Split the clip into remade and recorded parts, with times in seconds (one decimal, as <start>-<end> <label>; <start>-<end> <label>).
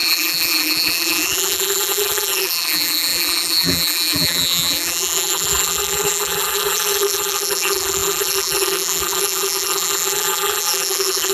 0.0-11.3 remade